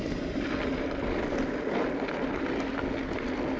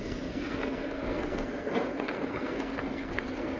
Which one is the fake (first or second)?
second